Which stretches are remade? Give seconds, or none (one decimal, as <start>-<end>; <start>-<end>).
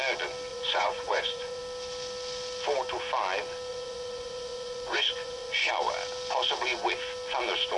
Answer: 0.5-1.6; 3.7-5.7